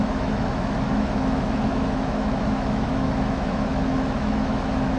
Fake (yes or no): yes